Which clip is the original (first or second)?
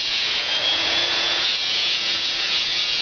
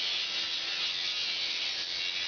second